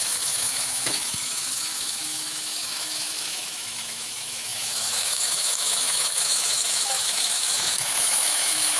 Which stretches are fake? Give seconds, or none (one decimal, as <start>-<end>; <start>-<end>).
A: 0.0-8.8